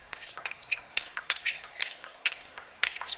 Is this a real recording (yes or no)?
no